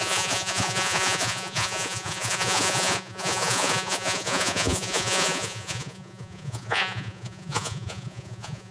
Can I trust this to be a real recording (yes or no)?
no